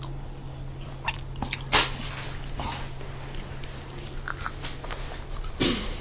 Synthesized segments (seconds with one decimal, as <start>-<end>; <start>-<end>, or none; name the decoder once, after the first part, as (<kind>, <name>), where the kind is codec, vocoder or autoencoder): none